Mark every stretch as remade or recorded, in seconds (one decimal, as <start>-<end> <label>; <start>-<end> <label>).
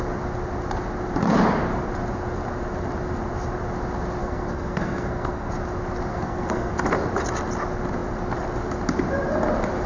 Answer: 0.0-4.2 recorded; 4.2-5.5 remade; 5.5-6.1 recorded; 6.1-6.7 remade; 6.7-9.9 recorded